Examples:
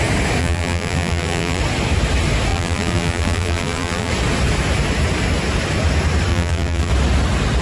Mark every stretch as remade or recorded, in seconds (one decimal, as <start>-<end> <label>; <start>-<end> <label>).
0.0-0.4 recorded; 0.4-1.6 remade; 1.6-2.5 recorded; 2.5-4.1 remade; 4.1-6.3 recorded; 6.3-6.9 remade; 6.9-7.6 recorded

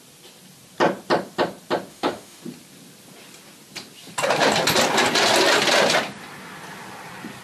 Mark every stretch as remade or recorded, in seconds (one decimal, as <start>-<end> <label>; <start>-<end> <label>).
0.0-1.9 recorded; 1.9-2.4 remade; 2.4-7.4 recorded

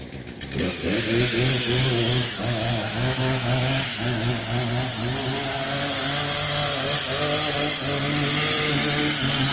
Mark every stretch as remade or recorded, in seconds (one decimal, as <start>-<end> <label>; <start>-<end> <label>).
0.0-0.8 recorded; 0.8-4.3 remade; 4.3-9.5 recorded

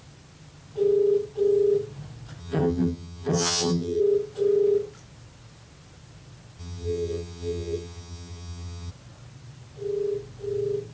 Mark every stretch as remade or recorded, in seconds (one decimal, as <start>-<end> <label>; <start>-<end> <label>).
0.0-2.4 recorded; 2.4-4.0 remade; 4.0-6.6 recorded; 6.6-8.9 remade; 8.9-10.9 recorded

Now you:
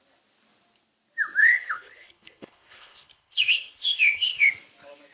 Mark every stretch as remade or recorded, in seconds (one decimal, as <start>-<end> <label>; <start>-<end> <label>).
0.0-1.4 recorded; 1.4-4.5 remade; 4.5-5.1 recorded

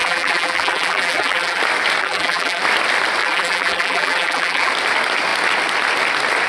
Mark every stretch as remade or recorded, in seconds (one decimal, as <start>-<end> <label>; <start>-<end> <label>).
0.0-1.6 remade; 1.6-2.0 recorded; 2.0-2.6 remade; 2.6-3.2 recorded; 3.2-4.7 remade; 4.7-6.5 recorded

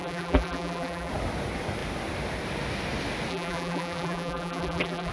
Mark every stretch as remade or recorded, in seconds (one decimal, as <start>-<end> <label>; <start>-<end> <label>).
0.0-1.1 remade; 1.1-3.3 recorded; 3.3-5.1 remade

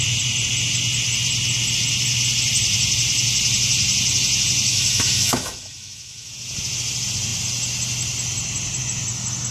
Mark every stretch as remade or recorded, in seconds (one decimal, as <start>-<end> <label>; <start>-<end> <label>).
0.0-4.7 recorded; 4.7-6.3 remade; 6.3-9.5 recorded